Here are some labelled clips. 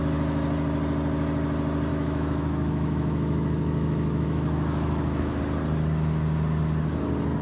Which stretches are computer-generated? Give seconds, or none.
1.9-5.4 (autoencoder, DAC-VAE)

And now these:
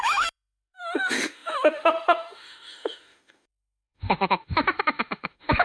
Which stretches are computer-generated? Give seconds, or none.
0.0-5.6 (autoencoder, DAC-VAE)

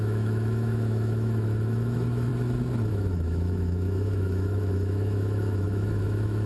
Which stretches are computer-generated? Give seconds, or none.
0.0-2.3 (autoencoder, DAC-VAE); 2.9-6.5

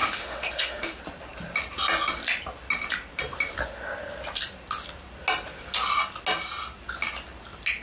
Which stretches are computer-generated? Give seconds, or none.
0.0-1.0 (autoencoder, DAC-VAE)

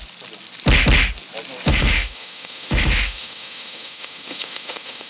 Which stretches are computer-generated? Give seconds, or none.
1.7-5.1 (autoencoder, DAC-VAE)